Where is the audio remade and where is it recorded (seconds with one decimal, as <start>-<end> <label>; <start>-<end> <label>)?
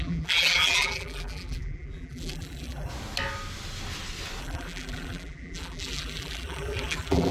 0.0-2.9 remade; 2.9-4.4 recorded; 4.4-7.3 remade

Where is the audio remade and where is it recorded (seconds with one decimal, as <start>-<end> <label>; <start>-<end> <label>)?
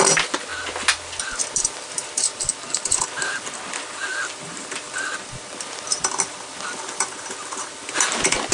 0.0-0.5 remade; 0.5-1.2 recorded; 1.2-8.5 remade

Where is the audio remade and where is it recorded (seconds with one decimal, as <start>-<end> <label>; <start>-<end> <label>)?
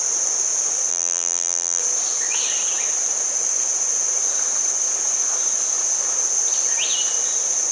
0.0-0.9 recorded; 0.9-1.8 remade; 1.8-7.7 recorded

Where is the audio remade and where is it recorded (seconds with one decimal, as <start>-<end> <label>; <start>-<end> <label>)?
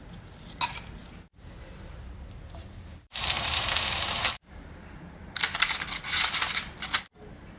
0.0-1.0 recorded; 1.0-1.9 remade; 1.9-2.9 recorded; 2.9-5.4 remade; 5.4-7.6 recorded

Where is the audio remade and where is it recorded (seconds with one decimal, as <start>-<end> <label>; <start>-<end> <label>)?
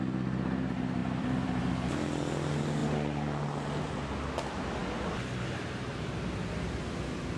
0.0-1.0 recorded; 1.0-1.6 remade; 1.6-7.4 recorded